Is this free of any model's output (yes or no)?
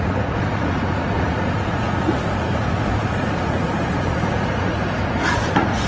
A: no